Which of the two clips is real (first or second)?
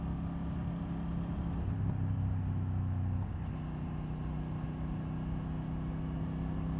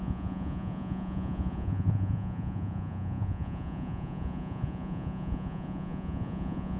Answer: first